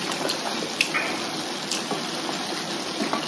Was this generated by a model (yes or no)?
no